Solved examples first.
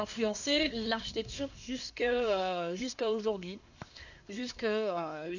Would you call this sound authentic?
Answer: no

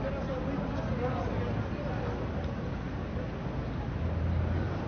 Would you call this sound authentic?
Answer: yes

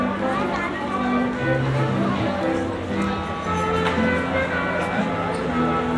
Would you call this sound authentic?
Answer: yes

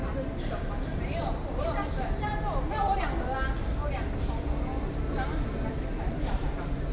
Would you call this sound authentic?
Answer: yes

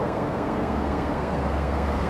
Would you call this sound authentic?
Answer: no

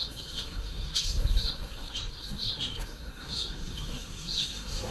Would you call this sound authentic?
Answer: no